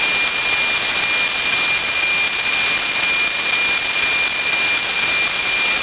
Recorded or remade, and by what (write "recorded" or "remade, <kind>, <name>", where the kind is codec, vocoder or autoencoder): recorded